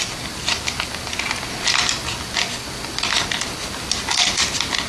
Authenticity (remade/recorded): recorded